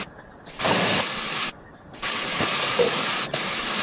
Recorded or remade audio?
remade